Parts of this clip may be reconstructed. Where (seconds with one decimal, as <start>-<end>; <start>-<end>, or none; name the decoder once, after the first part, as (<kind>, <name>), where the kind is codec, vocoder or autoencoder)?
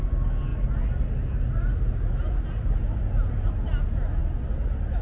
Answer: none